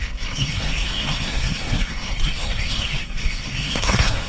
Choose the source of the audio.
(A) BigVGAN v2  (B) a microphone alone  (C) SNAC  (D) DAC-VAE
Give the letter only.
C